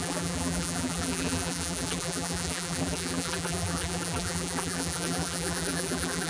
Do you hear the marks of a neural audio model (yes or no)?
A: yes